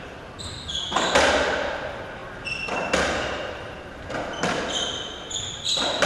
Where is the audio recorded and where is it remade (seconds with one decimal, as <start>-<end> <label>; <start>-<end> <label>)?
0.0-6.1 recorded